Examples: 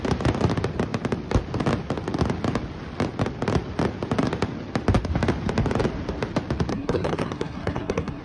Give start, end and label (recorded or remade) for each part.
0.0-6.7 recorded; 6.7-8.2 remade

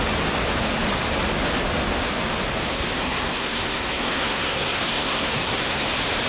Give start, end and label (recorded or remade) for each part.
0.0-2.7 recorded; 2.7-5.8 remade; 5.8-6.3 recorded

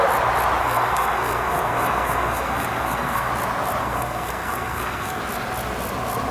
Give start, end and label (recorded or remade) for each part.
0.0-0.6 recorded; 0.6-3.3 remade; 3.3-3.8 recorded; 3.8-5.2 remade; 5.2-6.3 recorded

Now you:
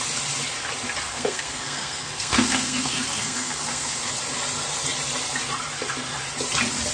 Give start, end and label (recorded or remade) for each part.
0.0-1.1 recorded; 1.1-4.1 remade; 4.1-6.9 recorded

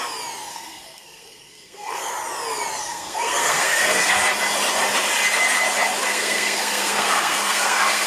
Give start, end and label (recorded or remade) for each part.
0.0-0.5 recorded; 0.5-2.1 remade; 2.1-2.8 recorded; 2.8-4.2 remade; 4.2-6.0 recorded; 6.0-8.1 remade

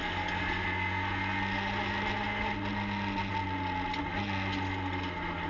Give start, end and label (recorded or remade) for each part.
0.0-5.5 recorded

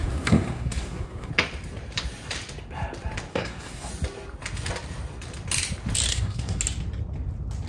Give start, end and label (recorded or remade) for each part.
0.0-1.3 remade; 1.3-3.3 recorded; 3.3-3.9 remade; 3.9-6.1 recorded; 6.1-6.6 remade; 6.6-7.7 recorded

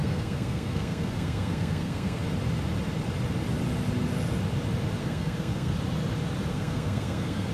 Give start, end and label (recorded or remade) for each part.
0.0-2.2 remade; 2.2-5.0 recorded; 5.0-5.8 remade; 5.8-6.5 recorded; 6.5-7.5 remade